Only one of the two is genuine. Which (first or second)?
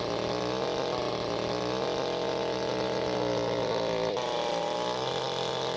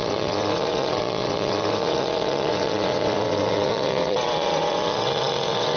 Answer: first